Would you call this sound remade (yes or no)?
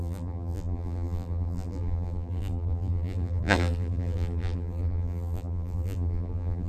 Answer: yes